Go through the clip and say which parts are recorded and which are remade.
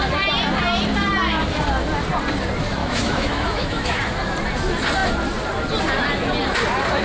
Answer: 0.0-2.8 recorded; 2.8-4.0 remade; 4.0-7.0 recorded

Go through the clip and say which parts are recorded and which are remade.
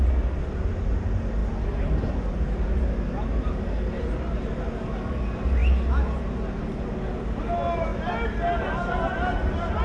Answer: 0.0-9.8 recorded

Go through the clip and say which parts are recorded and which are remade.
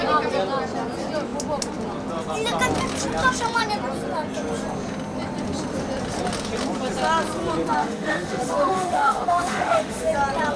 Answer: 0.0-7.8 recorded; 7.8-10.1 remade; 10.1-10.6 recorded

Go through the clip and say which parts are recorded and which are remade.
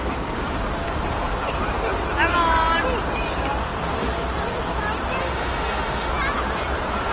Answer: 0.0-5.2 recorded; 5.2-6.1 remade; 6.1-7.1 recorded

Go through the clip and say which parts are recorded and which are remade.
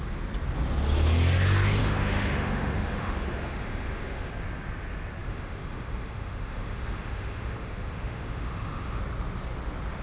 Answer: 0.0-1.8 recorded; 1.8-4.3 remade; 4.3-5.3 recorded; 5.3-9.0 remade; 9.0-10.0 recorded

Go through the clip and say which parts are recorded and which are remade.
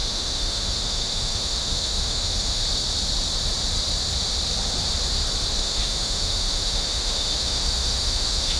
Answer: 0.0-2.6 remade; 2.6-5.5 recorded; 5.5-8.6 remade